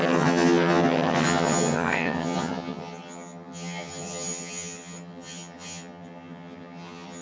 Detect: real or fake fake